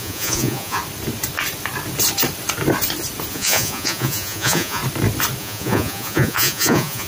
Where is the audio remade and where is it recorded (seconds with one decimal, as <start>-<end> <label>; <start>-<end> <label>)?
0.0-0.8 remade; 0.8-3.3 recorded; 3.3-4.8 remade; 4.8-5.4 recorded; 5.4-7.1 remade